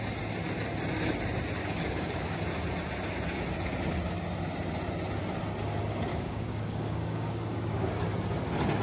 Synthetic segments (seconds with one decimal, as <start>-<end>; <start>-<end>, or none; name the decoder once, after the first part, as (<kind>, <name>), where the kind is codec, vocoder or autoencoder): 1.6-2.4 (codec, DAC); 6.1-7.9